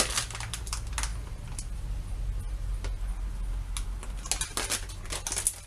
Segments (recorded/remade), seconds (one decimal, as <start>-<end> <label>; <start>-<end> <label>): 0.0-5.7 recorded